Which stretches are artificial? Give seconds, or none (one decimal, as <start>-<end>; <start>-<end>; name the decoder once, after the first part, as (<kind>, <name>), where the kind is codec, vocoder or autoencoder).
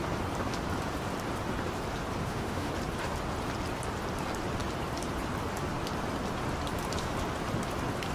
2.2-2.7 (autoencoder, DAC-VAE)